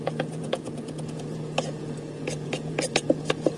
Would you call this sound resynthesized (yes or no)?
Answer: yes